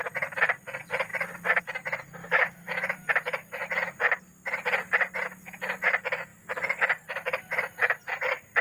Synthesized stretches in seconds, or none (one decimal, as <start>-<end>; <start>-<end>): 2.2-3.1

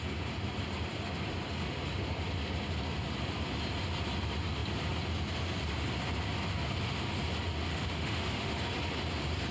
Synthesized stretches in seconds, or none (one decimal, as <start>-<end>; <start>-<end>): 7.7-8.6

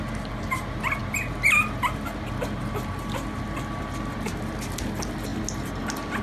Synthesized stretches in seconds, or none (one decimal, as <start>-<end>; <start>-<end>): none

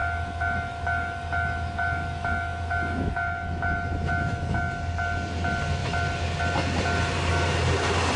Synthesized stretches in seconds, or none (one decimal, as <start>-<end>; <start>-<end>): 0.0-4.6

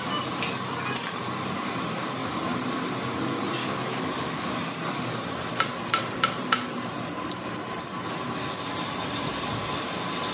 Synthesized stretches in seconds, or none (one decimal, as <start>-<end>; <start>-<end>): 3.6-4.7

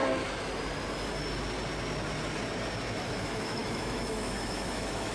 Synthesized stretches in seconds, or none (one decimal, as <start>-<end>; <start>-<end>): 3.1-5.1

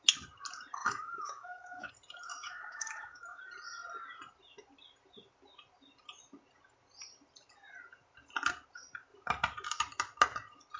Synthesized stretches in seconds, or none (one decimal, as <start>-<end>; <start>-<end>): 0.8-1.9; 2.3-3.4

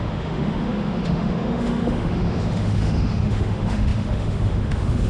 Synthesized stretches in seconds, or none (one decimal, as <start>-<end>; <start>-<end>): 0.0-5.1